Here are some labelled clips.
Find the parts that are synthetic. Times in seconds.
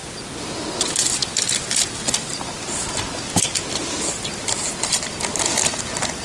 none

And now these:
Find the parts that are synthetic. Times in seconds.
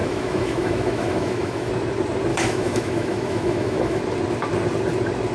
0.0-1.7 (autoencoder, DAC-VAE); 2.3-4.0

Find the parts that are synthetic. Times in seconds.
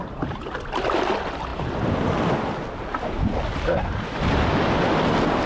none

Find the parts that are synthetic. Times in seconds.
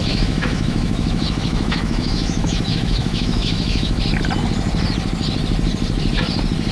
0.0-4.0 (autoencoder, DAC-VAE)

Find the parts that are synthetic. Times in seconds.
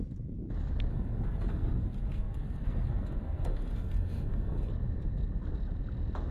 0.9-4.7 (codec, SNAC)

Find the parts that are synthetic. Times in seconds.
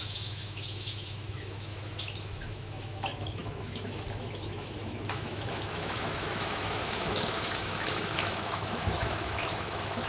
0.0-10.1 (autoencoder, DAC-VAE)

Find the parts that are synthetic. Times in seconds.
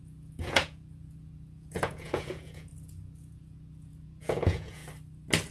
0.0-4.8 (vocoder, Vocos)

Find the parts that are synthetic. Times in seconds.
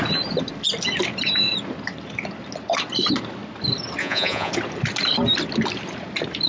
4.0-4.5 (vocoder, Vocos)